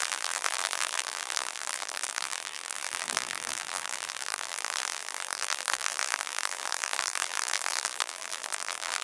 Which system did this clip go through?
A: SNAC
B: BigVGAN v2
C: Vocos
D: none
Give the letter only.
B